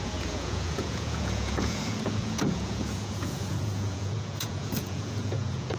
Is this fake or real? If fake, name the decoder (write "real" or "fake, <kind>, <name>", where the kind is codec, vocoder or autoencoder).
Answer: fake, vocoder, Vocos